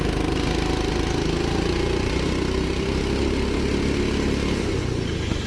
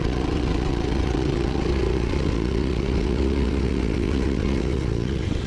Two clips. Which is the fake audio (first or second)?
second